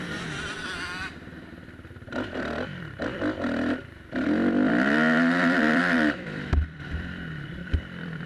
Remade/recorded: remade